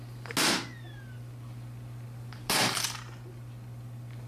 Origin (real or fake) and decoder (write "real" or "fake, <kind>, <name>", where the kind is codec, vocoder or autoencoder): real